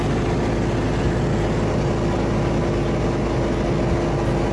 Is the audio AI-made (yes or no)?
no